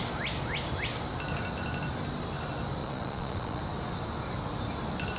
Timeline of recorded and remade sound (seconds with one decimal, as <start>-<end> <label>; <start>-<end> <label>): 0.0-2.8 recorded; 2.8-3.6 remade; 3.6-5.2 recorded